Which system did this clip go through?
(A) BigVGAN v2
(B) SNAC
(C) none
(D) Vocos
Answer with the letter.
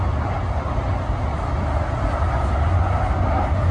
C